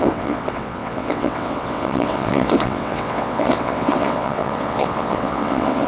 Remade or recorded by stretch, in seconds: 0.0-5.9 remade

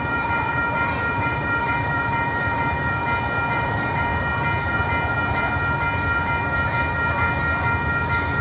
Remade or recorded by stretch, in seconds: 0.0-3.0 remade; 3.0-3.5 recorded; 3.5-4.1 remade; 4.1-8.4 recorded

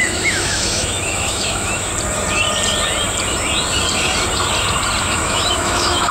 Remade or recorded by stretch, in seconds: 0.0-1.9 remade; 1.9-5.0 recorded; 5.0-6.1 remade

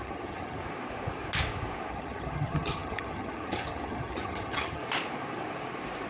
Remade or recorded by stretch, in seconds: 0.0-0.6 remade; 0.6-1.9 recorded; 1.9-4.8 remade; 4.8-6.1 recorded

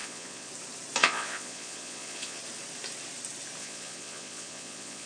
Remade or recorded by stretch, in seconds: 0.0-0.5 remade; 0.5-1.0 recorded; 1.0-2.4 remade; 2.4-3.6 recorded; 3.6-5.1 remade

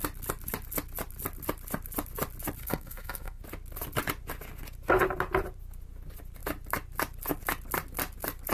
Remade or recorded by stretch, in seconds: 0.0-2.6 recorded; 2.6-3.4 remade; 3.4-8.5 recorded

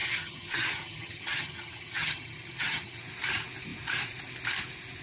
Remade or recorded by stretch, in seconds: 0.0-3.0 remade; 3.0-5.0 recorded